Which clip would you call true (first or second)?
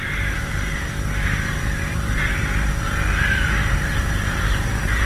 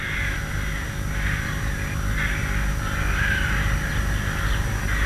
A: second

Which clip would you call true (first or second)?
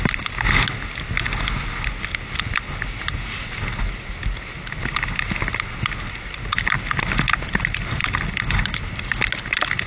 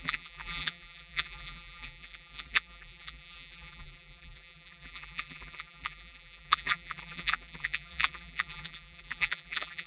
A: first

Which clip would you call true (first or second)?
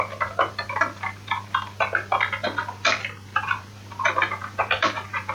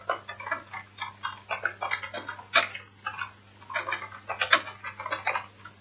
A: second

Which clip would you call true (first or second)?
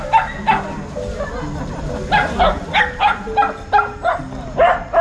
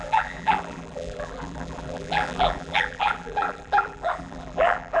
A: first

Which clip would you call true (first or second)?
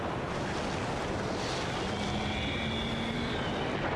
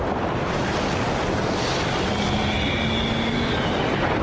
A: first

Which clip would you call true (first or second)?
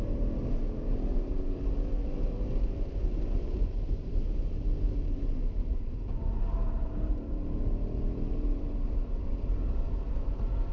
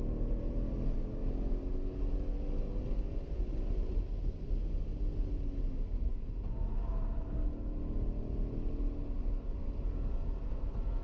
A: second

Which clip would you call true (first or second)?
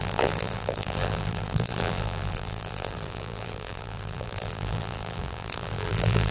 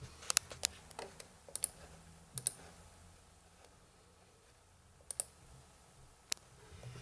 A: second